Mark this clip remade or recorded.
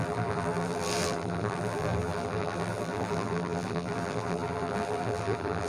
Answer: remade